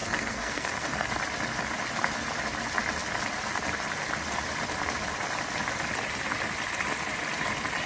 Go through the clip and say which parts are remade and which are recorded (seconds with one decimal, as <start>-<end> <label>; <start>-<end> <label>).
0.0-1.1 remade; 1.1-7.9 recorded